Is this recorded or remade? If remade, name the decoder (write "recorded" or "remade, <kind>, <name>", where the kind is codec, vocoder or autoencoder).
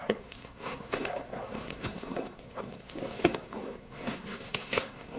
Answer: remade, codec, SNAC